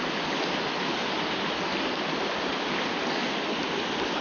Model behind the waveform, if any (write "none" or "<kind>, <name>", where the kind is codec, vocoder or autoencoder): none